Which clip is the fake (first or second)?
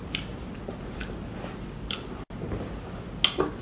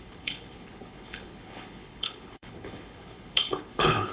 second